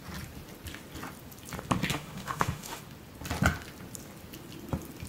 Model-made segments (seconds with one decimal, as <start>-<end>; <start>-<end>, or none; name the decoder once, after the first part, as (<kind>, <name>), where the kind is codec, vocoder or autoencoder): 1.9-2.8 (autoencoder, DAC-VAE)